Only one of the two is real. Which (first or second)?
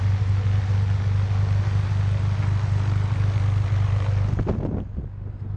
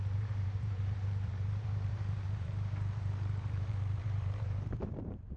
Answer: first